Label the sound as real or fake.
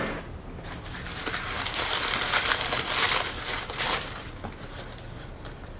real